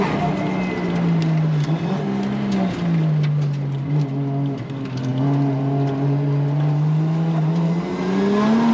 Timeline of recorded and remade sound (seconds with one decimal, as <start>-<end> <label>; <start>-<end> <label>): 0.0-8.7 recorded

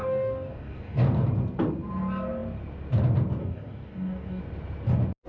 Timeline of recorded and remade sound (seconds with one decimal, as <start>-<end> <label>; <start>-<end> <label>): 0.0-1.0 remade; 1.0-3.4 recorded; 3.4-4.4 remade; 4.4-5.3 recorded

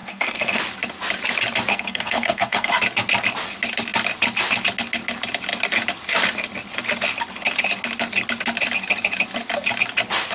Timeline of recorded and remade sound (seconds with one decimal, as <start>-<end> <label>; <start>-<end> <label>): 0.0-0.6 remade; 0.6-1.7 recorded; 1.7-2.7 remade; 2.7-10.3 recorded

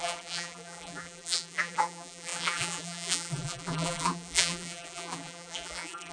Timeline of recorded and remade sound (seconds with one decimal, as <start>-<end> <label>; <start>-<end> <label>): 0.0-6.1 remade

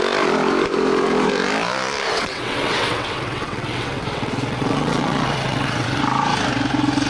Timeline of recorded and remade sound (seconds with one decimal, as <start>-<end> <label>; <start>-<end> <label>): 0.0-2.1 recorded; 2.1-6.0 remade; 6.0-7.1 recorded

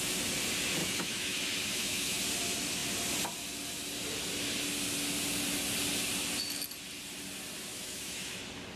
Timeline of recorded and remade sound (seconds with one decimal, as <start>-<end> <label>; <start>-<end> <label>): 0.0-0.8 recorded; 0.8-2.2 remade; 2.2-7.7 recorded; 7.7-8.4 remade; 8.4-8.8 recorded

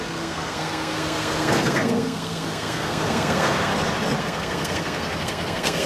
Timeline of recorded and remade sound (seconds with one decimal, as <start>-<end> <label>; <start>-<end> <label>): 0.0-3.7 remade; 3.7-4.2 recorded; 4.2-5.9 remade

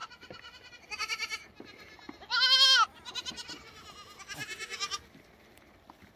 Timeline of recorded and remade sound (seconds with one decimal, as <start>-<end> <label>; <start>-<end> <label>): 0.0-6.2 recorded